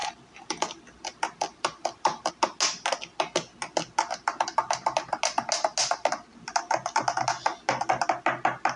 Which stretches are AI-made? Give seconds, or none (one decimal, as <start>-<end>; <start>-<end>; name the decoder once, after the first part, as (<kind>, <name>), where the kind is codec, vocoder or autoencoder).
0.0-2.3 (vocoder, BigVGAN v2)